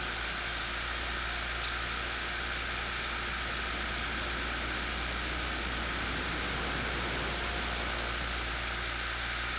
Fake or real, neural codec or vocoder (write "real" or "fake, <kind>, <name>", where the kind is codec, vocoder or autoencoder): real